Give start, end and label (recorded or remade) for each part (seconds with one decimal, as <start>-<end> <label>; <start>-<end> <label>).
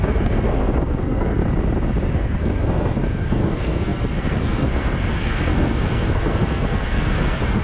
0.0-1.4 remade; 1.4-2.1 recorded; 2.1-7.6 remade